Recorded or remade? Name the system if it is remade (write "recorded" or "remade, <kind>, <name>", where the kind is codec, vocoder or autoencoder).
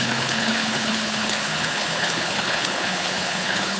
remade, codec, HILCodec